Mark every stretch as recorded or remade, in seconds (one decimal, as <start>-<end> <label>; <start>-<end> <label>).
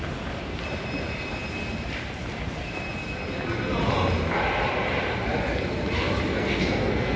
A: 0.0-6.3 recorded; 6.3-7.2 remade